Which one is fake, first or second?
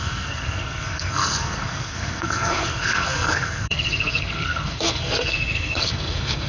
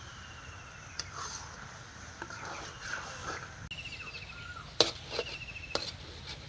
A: first